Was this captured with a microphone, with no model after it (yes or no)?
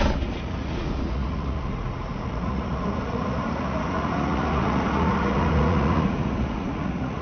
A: no